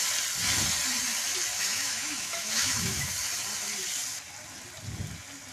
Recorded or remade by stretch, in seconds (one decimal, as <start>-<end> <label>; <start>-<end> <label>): 0.0-1.5 recorded; 1.5-3.1 remade; 3.1-5.5 recorded